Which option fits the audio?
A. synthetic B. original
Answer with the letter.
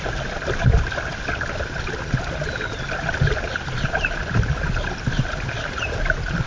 B